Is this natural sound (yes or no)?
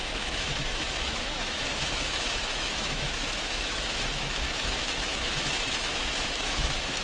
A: no